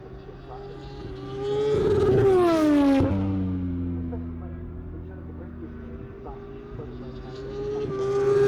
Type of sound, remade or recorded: recorded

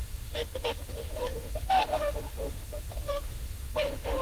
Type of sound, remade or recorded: remade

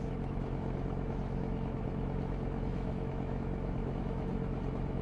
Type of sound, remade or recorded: remade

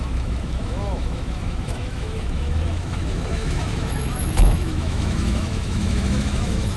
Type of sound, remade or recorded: remade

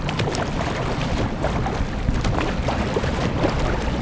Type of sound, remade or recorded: recorded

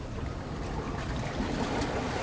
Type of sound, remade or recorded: recorded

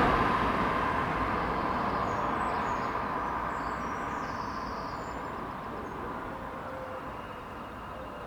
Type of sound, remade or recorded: recorded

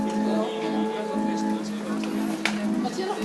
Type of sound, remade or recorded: recorded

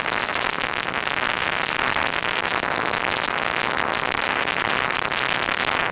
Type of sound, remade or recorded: recorded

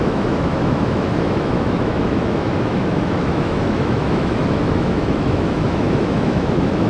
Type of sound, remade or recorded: remade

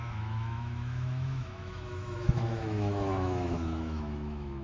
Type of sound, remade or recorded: remade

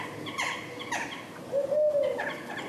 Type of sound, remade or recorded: recorded